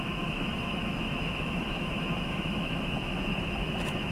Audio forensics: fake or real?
fake